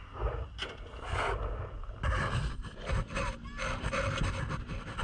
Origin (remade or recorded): recorded